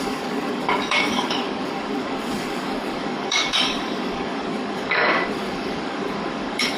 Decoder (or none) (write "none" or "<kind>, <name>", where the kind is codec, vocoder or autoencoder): codec, DAC